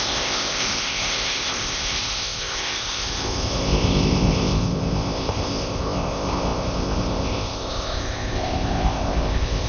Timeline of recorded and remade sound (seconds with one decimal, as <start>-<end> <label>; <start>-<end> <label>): 0.0-9.7 remade